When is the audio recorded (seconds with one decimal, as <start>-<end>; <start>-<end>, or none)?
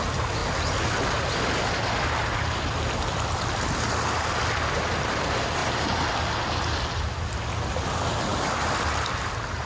0.0-9.7